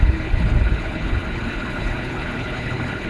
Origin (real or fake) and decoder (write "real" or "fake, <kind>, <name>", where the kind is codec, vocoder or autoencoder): fake, codec, HILCodec